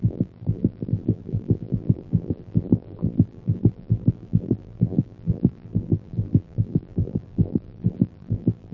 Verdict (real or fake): fake